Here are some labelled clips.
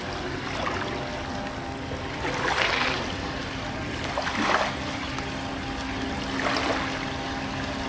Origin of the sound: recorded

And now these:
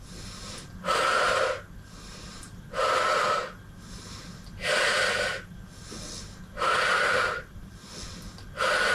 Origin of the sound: recorded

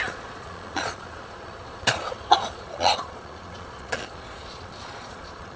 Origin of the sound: remade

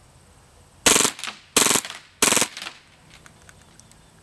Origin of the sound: recorded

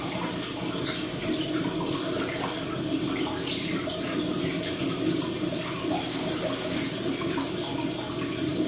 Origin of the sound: recorded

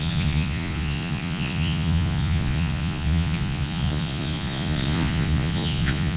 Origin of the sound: remade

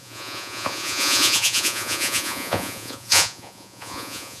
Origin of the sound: remade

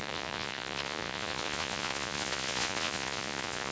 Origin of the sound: remade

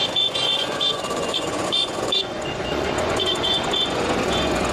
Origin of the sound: remade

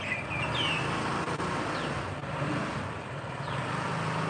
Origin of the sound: recorded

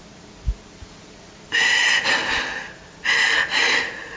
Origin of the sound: recorded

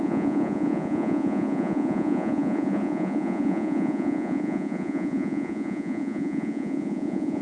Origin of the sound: remade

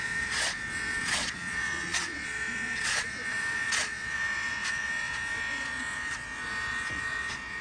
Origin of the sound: remade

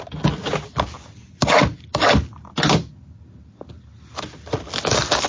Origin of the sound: recorded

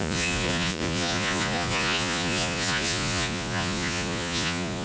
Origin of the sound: remade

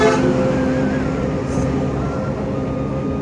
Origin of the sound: recorded